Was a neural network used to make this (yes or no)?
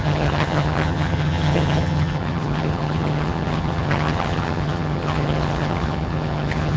yes